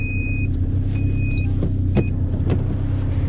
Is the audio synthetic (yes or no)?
no